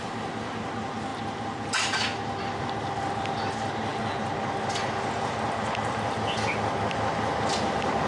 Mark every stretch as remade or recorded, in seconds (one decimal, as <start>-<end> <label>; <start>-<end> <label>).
0.0-8.1 recorded